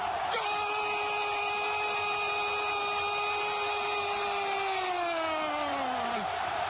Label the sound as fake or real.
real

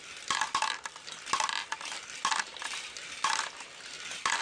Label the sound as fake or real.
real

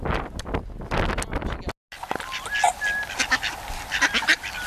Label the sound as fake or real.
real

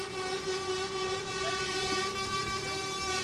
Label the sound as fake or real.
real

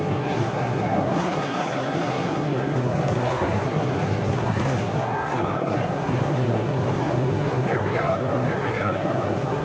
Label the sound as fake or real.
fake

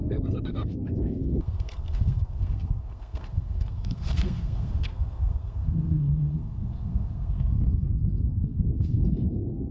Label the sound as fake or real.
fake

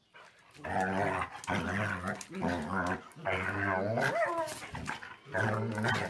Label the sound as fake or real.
real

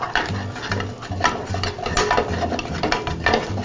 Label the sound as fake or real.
real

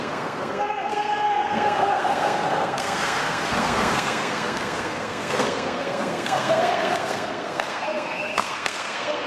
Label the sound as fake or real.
fake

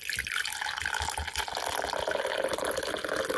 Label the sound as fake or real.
real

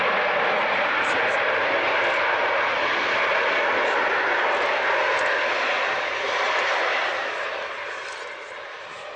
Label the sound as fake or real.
real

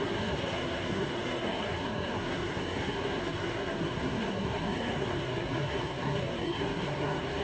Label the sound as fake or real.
fake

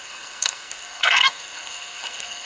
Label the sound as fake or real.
fake